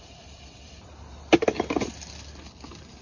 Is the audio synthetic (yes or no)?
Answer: no